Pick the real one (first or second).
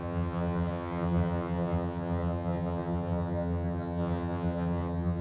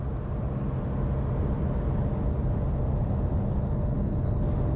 second